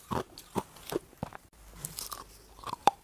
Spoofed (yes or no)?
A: no